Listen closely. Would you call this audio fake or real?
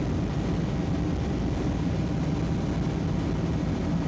real